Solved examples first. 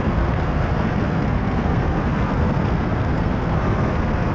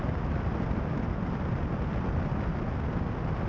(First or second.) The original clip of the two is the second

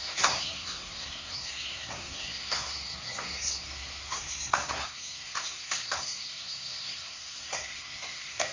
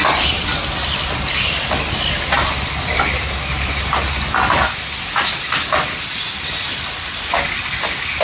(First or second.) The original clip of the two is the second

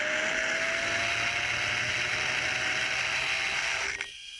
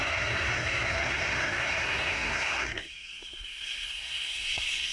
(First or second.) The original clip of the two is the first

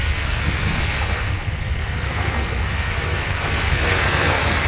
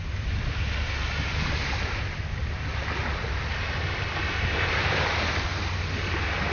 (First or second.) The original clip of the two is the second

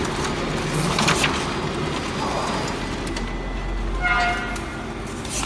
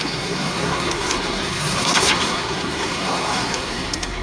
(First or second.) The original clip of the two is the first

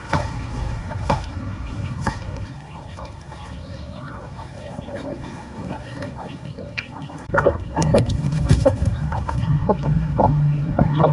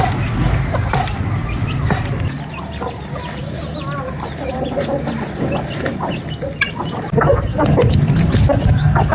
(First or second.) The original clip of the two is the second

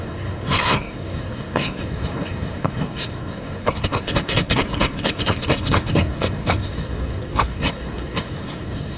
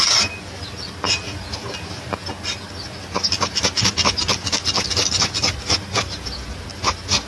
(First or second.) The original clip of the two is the second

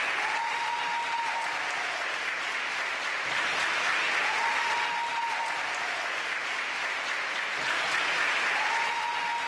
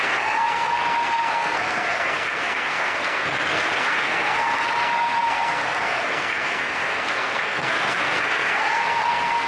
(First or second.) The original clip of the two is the first